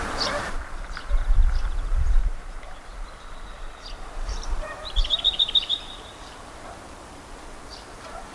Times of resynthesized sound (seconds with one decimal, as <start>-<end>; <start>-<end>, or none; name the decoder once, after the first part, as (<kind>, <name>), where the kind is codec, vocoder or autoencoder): 0.0-8.3 (vocoder, BigVGAN v2)